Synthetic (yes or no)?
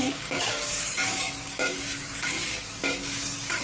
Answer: yes